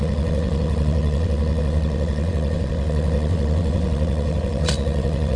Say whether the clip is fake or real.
fake